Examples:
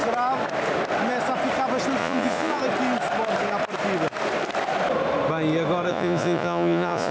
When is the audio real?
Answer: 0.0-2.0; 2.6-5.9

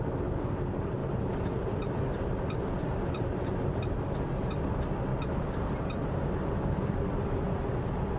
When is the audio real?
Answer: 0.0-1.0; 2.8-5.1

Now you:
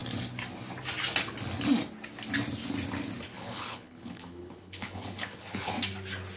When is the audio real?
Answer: 0.0-3.3; 5.7-6.4

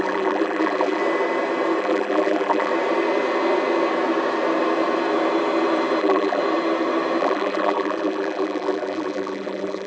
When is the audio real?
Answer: 1.0-1.8; 2.7-6.0; 6.4-7.2

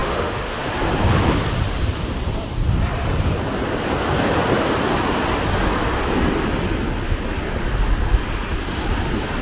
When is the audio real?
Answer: 0.7-9.4

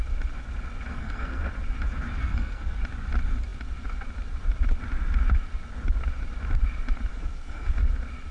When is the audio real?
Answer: 0.0-0.9; 1.5-2.2; 2.8-7.1; 7.8-8.3